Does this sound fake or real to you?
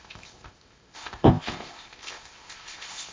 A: fake